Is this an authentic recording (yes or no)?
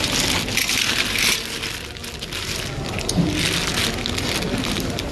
yes